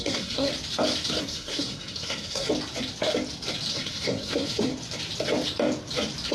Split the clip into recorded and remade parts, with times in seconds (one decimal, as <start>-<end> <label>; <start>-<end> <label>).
0.0-0.5 remade; 0.5-1.2 recorded; 1.2-2.5 remade; 2.5-3.7 recorded; 3.7-4.7 remade; 4.7-6.3 recorded